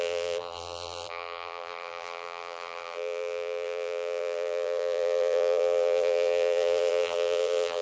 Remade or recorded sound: remade